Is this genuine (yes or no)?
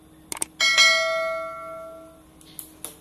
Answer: yes